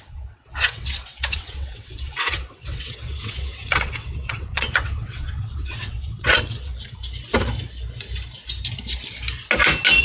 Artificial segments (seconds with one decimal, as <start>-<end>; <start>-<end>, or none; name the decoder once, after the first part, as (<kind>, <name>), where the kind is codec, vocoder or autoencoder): 0.0-6.7 (vocoder, WaveNeXt)